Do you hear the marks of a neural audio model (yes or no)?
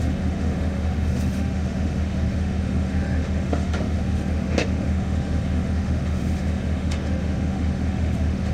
yes